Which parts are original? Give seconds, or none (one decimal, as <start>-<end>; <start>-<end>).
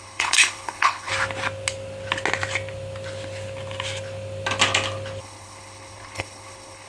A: 1.1-5.2